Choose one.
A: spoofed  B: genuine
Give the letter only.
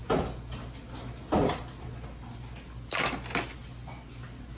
B